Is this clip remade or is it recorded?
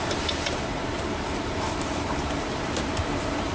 remade